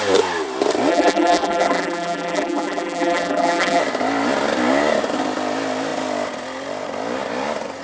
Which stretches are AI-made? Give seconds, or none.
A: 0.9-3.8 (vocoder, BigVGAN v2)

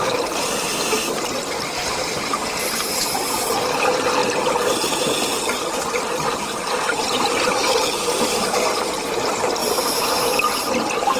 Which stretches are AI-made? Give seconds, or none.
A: none